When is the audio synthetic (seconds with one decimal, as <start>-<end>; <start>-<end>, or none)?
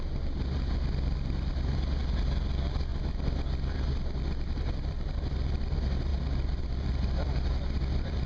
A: 0.0-2.9; 3.7-6.1; 6.6-8.3